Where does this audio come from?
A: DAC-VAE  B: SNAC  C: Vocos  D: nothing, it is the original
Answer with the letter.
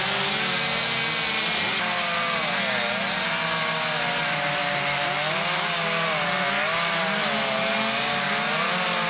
D